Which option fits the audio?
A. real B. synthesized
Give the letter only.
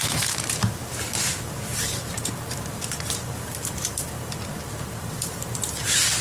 B